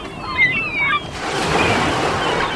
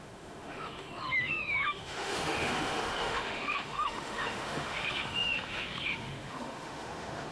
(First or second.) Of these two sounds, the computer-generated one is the second